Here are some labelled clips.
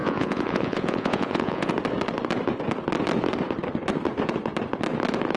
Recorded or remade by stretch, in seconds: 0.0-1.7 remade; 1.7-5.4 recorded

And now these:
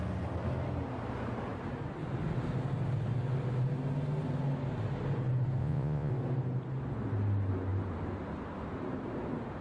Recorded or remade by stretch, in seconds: 0.0-5.6 recorded; 5.6-6.1 remade; 6.1-9.6 recorded

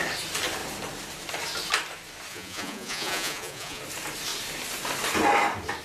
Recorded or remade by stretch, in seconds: 0.0-2.3 recorded; 2.3-3.8 remade; 3.8-5.8 recorded

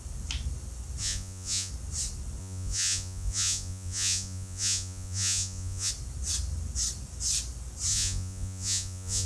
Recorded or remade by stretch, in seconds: 0.0-1.0 recorded; 1.0-1.7 remade; 1.7-2.4 recorded; 2.4-5.9 remade; 5.9-7.9 recorded; 7.9-9.3 remade

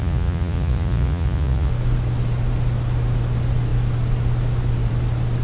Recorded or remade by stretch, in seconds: 0.0-1.7 remade; 1.7-5.4 recorded

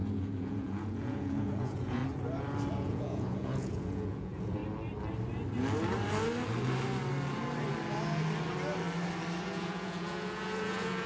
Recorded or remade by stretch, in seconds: 0.0-2.0 remade; 2.0-2.7 recorded; 2.7-4.6 remade; 4.6-9.4 recorded; 9.4-11.1 remade